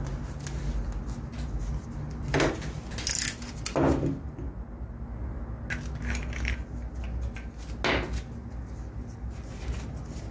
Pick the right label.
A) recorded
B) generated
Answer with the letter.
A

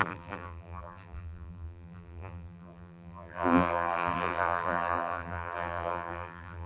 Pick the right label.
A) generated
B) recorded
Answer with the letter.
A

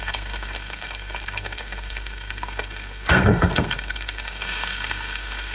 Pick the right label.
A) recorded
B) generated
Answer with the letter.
B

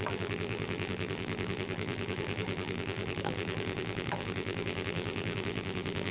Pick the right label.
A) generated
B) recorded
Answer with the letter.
A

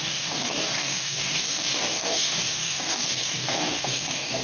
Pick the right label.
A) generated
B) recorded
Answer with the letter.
A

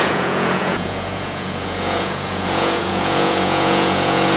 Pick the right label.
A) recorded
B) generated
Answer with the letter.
B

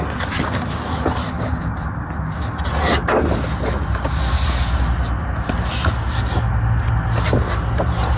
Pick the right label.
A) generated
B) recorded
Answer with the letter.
B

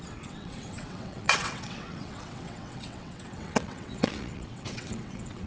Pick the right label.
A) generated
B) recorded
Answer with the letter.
A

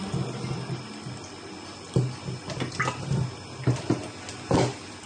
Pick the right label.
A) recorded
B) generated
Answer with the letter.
A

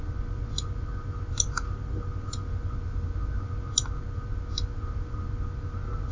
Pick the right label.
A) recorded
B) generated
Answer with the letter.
A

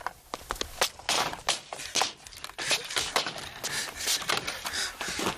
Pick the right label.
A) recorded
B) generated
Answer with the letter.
A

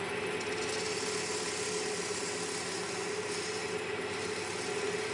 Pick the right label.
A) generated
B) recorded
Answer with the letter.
B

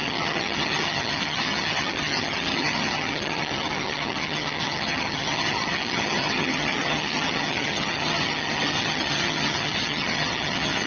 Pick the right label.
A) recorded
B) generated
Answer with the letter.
B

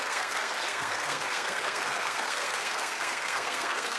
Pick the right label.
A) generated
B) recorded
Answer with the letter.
A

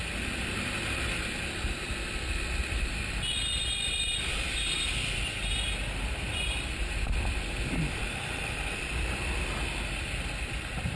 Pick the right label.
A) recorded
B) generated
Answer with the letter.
A